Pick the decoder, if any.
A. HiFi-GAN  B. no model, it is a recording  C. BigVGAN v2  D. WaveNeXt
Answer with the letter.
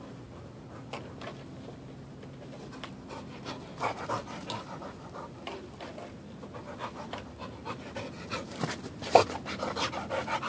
B